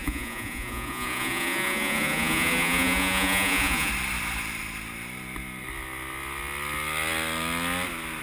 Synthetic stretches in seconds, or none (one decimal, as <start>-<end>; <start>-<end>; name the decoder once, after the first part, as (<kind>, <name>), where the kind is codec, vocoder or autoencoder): 0.0-3.9 (vocoder, Vocos)